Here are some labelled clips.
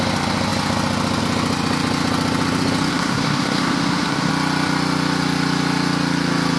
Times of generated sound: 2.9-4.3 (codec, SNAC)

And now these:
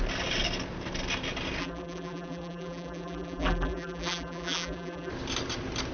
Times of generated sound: 1.6-5.1 (vocoder, BigVGAN v2)

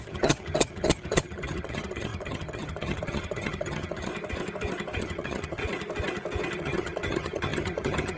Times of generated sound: 0.0-4.1 (vocoder, HiFi-GAN); 5.0-5.6; 6.6-8.2

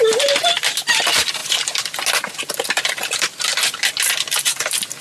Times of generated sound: none

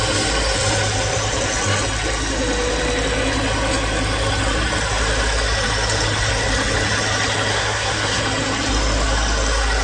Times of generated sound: 7.5-8.2 (codec, SNAC)

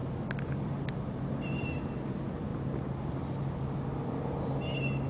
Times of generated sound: 0.0-1.3 (vocoder, BigVGAN v2)